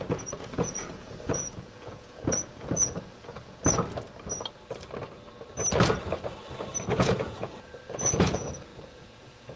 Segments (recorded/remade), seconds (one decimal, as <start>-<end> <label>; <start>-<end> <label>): 0.0-3.6 remade; 3.6-6.9 recorded; 6.9-9.6 remade